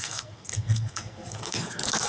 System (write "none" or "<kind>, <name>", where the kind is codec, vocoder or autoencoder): codec, SNAC